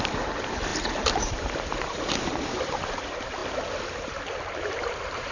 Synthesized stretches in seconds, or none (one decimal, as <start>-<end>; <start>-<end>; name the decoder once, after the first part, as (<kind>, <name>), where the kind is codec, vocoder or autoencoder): 0.0-5.3 (vocoder, BigVGAN v2)